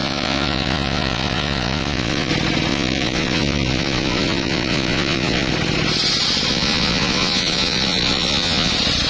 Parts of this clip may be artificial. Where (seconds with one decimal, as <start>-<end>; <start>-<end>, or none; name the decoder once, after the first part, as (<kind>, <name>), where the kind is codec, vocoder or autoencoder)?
0.0-2.3 (vocoder, Vocos); 2.7-5.5; 6.5-8.7